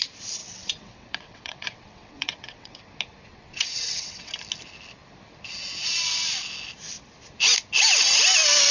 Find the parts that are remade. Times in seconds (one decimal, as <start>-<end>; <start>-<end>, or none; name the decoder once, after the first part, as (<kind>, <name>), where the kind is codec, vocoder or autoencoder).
0.4-2.8 (vocoder, WaveNeXt); 3.3-4.3